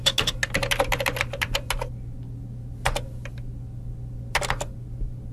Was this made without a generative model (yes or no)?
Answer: yes